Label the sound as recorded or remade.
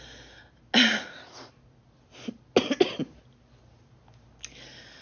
recorded